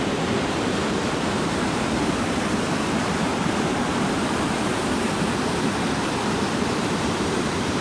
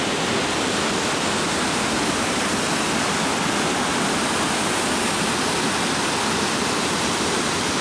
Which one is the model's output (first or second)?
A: first